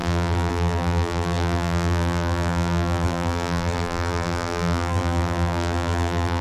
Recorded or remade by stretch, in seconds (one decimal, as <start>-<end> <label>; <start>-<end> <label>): 0.0-6.4 remade